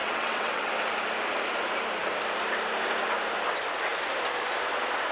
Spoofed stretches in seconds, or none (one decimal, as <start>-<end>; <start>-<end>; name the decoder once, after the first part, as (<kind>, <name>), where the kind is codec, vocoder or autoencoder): 0.0-0.7 (vocoder, WaveNeXt)